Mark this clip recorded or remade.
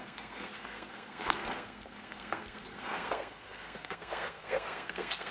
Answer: remade